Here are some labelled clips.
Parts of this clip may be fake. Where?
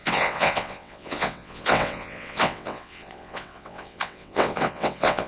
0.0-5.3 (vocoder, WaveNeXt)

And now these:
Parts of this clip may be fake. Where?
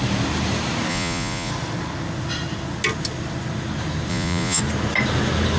0.9-1.5 (vocoder, Vocos); 4.1-4.6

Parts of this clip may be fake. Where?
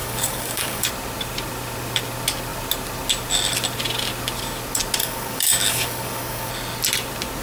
0.0-0.9 (codec, DAC); 5.0-6.5